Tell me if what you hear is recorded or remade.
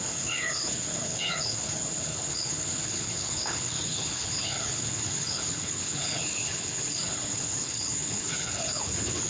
remade